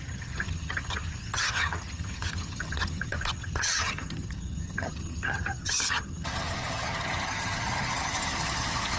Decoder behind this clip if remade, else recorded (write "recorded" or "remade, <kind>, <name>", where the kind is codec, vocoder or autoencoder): remade, vocoder, HiFi-GAN